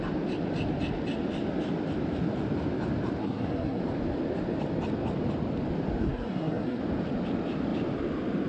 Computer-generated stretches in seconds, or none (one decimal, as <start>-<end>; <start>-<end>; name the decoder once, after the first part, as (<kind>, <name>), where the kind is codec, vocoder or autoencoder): 3.2-3.8 (codec, SNAC); 6.0-6.8